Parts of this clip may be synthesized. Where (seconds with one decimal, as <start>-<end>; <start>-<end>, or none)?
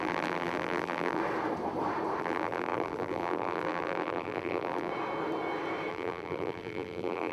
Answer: 0.0-1.2; 2.2-4.9; 5.9-7.3